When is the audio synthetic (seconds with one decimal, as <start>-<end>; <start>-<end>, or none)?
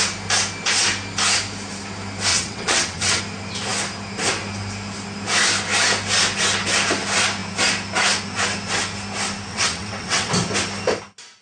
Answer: 2.3-3.2; 9.5-10.3